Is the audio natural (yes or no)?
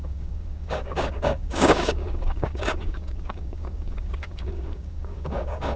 no